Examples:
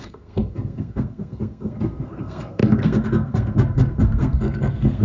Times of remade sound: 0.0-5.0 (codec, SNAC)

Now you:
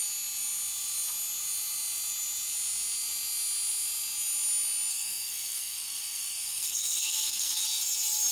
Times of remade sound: 4.9-7.6 (codec, SNAC)

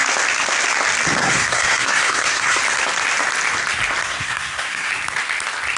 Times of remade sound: 1.2-2.6 (codec, SNAC); 4.0-4.9